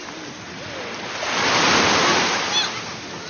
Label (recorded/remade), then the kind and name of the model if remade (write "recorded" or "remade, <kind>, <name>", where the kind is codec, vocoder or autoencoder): recorded